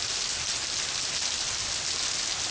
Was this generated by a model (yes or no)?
no